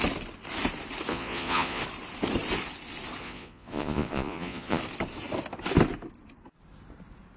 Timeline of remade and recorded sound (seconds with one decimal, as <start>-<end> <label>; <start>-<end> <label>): 0.0-1.1 recorded; 1.1-1.8 remade; 1.8-3.2 recorded; 3.2-4.8 remade; 4.8-7.4 recorded